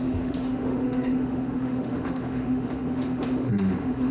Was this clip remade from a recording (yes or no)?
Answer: yes